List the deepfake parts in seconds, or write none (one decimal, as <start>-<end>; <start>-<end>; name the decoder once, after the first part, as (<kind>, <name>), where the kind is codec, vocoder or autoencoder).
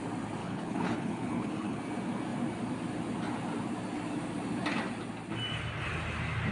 0.4-1.8 (codec, HILCodec)